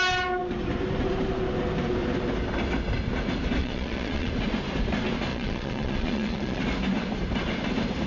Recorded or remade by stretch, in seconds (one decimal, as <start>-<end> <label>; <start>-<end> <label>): 0.0-3.6 recorded; 3.6-4.3 remade; 4.3-5.3 recorded; 5.3-6.6 remade; 6.6-8.1 recorded